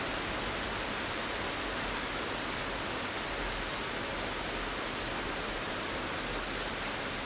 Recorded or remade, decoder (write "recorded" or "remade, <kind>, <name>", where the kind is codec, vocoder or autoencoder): recorded